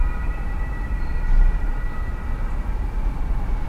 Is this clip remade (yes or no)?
no